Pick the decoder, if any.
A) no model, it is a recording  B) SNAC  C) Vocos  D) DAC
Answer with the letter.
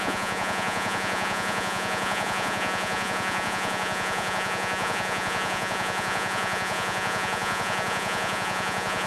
C